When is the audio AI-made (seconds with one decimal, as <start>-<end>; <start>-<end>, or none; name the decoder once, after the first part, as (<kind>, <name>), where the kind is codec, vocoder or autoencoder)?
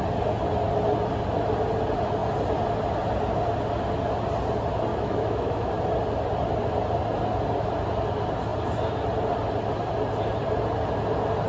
4.9-5.7 (autoencoder, DAC-VAE)